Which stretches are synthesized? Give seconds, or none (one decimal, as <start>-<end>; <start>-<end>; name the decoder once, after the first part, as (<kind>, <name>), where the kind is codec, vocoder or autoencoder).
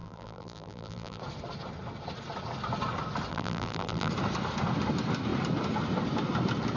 0.0-1.2 (vocoder, BigVGAN v2); 3.3-4.1